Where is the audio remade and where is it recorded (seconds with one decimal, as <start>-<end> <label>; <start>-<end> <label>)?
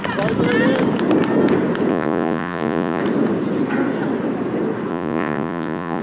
0.0-1.9 recorded; 1.9-3.0 remade; 3.0-4.9 recorded; 4.9-6.0 remade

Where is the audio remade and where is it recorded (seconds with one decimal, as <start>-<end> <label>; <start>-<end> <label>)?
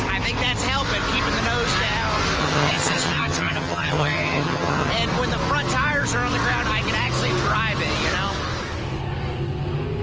0.0-2.4 recorded; 2.4-4.9 remade; 4.9-10.0 recorded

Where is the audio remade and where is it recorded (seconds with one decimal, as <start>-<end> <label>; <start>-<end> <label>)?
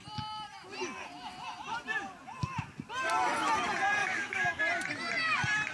0.0-4.0 recorded; 4.0-4.6 remade; 4.6-5.7 recorded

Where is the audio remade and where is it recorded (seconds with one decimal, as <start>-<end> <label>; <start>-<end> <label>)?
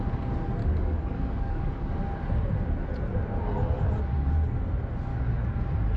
0.0-0.6 recorded; 0.6-1.9 remade; 1.9-5.1 recorded; 5.1-5.6 remade; 5.6-6.0 recorded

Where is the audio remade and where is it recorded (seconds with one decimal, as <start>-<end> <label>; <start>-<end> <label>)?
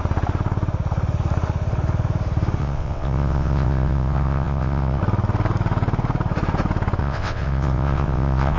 0.0-2.6 recorded; 2.6-5.0 remade; 5.0-7.0 recorded; 7.0-8.6 remade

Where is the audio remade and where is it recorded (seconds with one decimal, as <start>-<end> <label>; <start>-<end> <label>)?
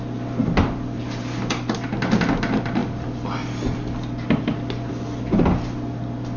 0.0-6.4 recorded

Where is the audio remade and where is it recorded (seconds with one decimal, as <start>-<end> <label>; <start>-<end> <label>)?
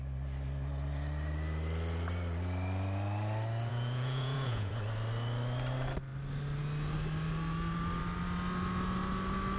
0.0-3.7 recorded; 3.7-4.7 remade; 4.7-9.6 recorded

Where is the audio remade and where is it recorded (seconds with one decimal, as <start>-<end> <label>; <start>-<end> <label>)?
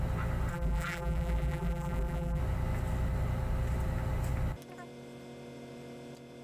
0.0-0.5 recorded; 0.5-2.4 remade; 2.4-6.4 recorded